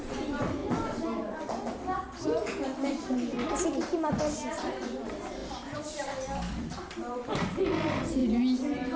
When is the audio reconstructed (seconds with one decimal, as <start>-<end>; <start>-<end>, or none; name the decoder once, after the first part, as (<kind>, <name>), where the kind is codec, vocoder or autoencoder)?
0.0-0.6 (vocoder, BigVGAN v2); 3.5-8.2